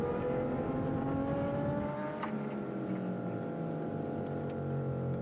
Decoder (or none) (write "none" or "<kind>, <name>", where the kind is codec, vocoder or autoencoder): none